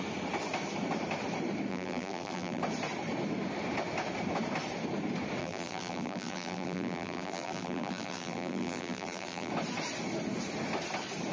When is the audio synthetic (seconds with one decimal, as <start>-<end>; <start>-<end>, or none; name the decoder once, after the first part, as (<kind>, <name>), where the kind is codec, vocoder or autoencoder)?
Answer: 1.7-2.6 (vocoder, BigVGAN v2); 5.4-9.5